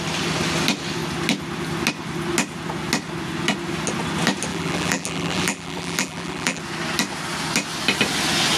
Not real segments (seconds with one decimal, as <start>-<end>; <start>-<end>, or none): 4.5-6.6